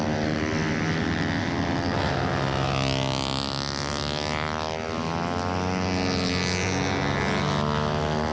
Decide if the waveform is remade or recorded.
recorded